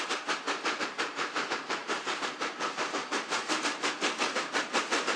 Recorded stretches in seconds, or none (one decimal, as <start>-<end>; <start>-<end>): none